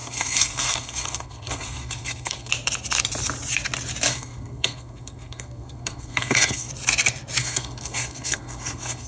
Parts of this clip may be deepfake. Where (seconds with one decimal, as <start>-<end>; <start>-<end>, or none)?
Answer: 0.0-2.5; 4.1-6.7; 7.4-9.1

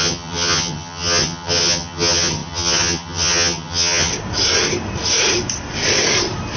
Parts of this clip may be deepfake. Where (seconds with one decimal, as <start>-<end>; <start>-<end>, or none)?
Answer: 0.0-4.1

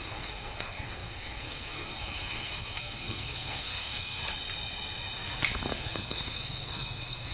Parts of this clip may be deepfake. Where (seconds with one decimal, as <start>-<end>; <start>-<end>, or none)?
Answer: 0.0-4.2; 5.7-7.3